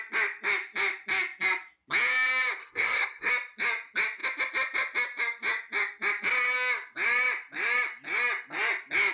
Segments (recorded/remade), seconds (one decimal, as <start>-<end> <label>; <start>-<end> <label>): 0.0-2.6 recorded; 2.6-3.3 remade; 3.3-9.1 recorded